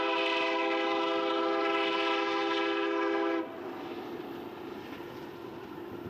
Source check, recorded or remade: recorded